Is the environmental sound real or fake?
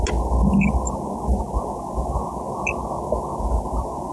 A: real